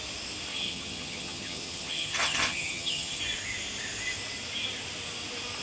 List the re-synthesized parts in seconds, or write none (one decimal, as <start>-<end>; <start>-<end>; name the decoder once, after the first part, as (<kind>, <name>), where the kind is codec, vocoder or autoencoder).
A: 0.5-3.2 (vocoder, HiFi-GAN)